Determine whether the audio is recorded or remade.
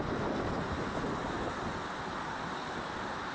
recorded